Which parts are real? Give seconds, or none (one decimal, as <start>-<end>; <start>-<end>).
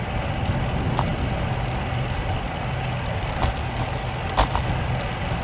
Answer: 0.0-5.4